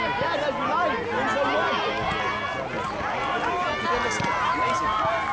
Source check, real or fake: real